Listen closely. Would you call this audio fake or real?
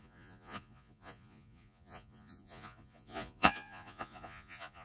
fake